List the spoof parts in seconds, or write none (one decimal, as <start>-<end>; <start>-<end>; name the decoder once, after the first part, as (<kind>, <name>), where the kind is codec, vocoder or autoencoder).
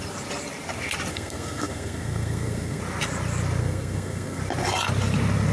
1.1-2.8 (codec, SNAC); 3.6-4.4